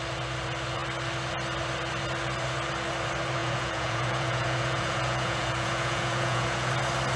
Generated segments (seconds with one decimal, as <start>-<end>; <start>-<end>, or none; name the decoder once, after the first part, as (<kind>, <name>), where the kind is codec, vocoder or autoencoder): 3.4-6.7 (vocoder, Vocos)